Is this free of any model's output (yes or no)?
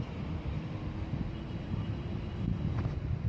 no